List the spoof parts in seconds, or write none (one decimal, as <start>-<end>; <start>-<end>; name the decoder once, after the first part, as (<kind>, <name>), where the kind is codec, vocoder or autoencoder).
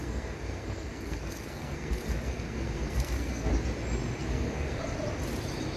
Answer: 0.0-3.5 (codec, SNAC); 4.2-4.8